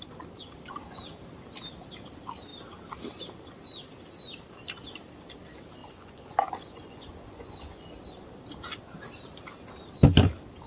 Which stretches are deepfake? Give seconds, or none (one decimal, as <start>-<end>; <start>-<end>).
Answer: 5.8-7.9